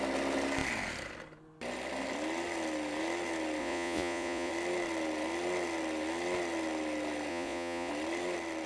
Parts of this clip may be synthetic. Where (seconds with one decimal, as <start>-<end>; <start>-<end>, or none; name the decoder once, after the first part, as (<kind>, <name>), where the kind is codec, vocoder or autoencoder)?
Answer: 3.6-4.5 (vocoder, Vocos); 7.3-7.9